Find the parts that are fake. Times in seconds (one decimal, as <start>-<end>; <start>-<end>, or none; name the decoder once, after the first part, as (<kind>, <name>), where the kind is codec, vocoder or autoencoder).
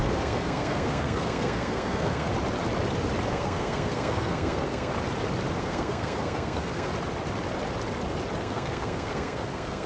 0.0-2.3 (codec, SNAC); 3.3-4.9; 5.6-6.9; 8.4-9.9